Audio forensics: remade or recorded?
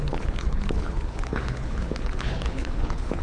remade